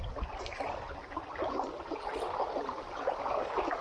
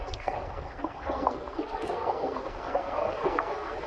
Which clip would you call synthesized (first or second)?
second